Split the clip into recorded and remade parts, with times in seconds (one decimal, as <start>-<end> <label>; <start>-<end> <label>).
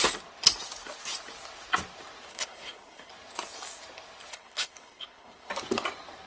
0.0-2.3 recorded; 2.3-3.1 remade; 3.1-4.3 recorded; 4.3-5.5 remade; 5.5-6.3 recorded